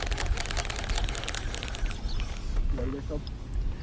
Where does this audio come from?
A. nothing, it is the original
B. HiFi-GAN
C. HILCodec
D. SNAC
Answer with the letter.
A